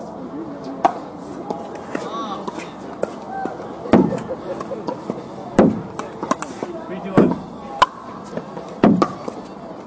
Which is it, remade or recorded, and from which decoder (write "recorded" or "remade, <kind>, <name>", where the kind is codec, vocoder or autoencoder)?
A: recorded